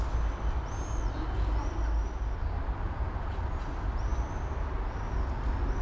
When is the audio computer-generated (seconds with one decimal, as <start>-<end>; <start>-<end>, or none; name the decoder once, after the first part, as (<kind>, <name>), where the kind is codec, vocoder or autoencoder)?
none